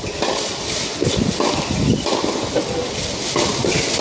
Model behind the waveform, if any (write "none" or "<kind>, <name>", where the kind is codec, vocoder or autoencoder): none